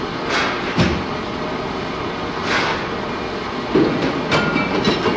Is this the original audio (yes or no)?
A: yes